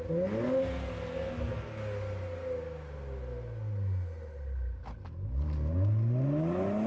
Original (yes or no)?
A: yes